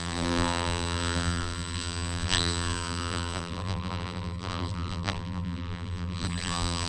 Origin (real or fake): fake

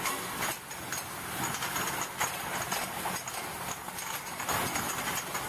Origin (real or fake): real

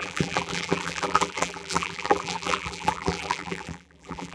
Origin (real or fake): fake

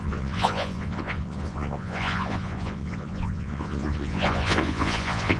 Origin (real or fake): fake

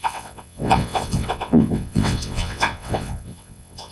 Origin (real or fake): fake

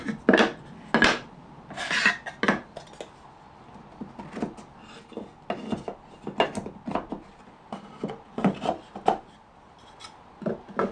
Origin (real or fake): real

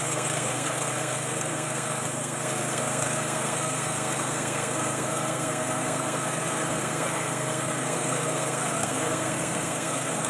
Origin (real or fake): fake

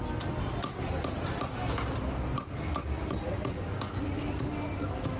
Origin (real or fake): real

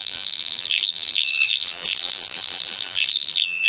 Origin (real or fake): fake